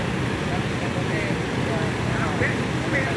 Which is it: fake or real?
real